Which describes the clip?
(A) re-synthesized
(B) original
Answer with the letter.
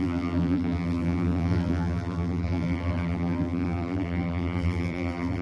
A